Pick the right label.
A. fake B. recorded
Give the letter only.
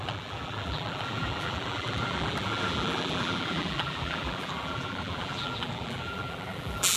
A